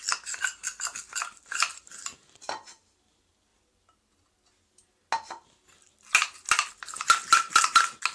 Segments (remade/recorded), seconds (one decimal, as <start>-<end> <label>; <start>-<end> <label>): 0.0-1.7 recorded; 1.7-2.8 remade; 2.8-8.1 recorded